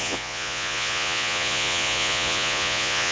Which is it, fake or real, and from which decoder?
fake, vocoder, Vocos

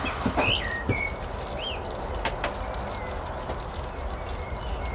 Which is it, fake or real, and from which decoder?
real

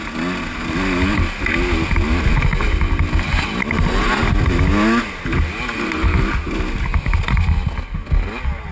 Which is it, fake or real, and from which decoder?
real